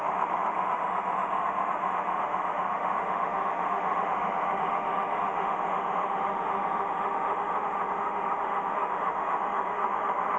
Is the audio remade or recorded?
remade